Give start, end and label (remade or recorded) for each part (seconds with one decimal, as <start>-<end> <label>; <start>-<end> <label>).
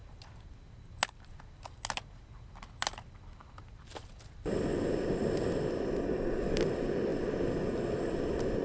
0.0-8.6 recorded